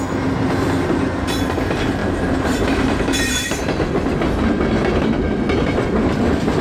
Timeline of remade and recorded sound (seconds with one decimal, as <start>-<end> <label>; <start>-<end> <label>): 0.0-2.0 recorded; 2.0-3.9 remade; 3.9-6.6 recorded